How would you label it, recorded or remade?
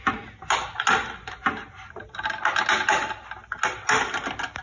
recorded